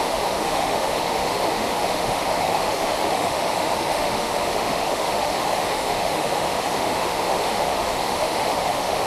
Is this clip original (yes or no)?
no